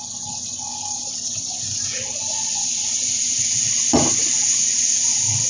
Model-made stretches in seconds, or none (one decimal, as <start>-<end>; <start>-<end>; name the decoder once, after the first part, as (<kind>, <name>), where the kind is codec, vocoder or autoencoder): 0.7-3.3 (vocoder, BigVGAN v2)